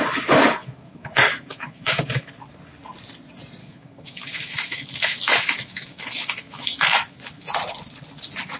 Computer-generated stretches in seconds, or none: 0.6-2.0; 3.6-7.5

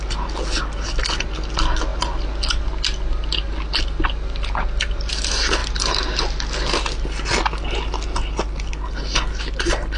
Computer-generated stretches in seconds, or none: none

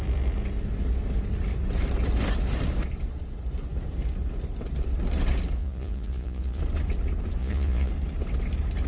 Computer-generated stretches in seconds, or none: 5.6-6.6; 7.4-7.9

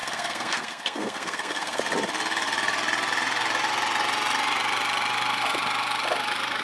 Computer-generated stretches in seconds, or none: 0.0-1.8

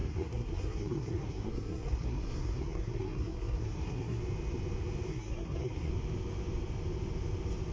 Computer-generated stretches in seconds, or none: 0.0-4.2; 5.1-5.9

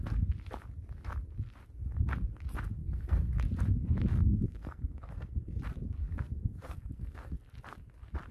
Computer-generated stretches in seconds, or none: 2.8-3.3; 4.1-5.6; 6.0-7.4

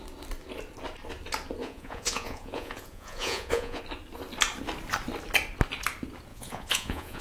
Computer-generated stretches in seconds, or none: 1.6-3.8; 6.3-7.2